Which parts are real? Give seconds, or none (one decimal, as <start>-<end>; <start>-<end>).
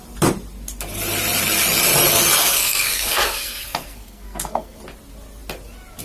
0.0-2.4; 4.8-6.0